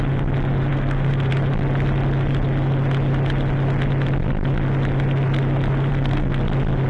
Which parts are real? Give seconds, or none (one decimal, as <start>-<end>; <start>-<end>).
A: 0.0-0.7; 1.3-5.9; 6.4-6.9